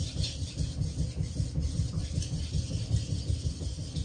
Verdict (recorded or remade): recorded